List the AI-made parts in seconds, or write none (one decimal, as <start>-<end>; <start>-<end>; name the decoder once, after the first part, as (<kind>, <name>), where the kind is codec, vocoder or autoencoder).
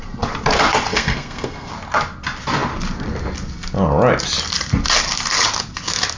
0.9-1.7 (codec, SNAC)